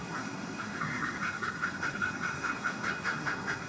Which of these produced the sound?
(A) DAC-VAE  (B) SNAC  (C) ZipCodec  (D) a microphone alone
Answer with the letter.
B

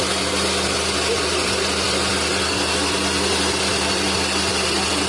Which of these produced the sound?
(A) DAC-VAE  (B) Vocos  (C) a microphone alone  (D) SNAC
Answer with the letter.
C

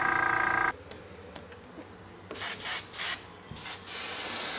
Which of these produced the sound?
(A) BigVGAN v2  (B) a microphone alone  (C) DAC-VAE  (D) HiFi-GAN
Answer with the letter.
B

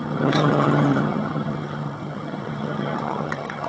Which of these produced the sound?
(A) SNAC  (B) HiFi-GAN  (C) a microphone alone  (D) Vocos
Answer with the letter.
B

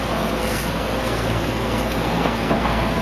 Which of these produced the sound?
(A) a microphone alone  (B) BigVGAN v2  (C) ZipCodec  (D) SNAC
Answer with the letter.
D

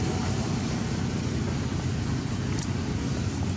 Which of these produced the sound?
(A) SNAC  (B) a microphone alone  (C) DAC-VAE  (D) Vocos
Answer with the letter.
B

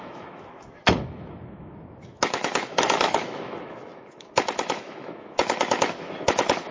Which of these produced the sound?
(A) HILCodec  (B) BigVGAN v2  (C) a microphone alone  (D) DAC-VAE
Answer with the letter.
D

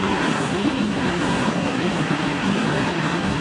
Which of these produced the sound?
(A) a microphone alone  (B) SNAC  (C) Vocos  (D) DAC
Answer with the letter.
B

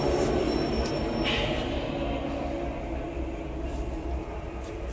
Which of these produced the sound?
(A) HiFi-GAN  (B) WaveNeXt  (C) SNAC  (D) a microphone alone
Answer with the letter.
D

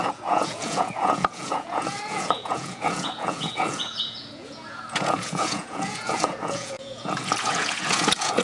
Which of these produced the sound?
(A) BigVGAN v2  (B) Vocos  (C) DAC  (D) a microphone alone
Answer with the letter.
B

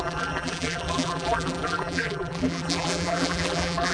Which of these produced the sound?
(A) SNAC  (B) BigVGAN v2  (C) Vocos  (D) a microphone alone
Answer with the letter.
B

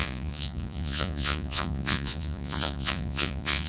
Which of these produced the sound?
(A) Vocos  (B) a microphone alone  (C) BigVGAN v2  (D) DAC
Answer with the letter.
A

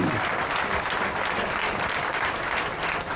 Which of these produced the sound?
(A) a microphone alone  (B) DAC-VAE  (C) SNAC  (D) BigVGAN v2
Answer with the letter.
A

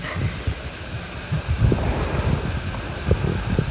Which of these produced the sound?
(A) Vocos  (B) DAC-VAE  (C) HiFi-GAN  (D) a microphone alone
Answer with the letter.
D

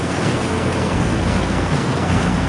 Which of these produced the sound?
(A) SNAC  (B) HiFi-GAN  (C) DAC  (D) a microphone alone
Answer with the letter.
A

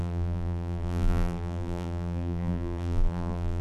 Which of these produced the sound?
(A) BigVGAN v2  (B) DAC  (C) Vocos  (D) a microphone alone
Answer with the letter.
A